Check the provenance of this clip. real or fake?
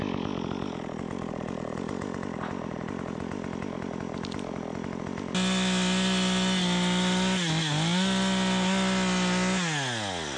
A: real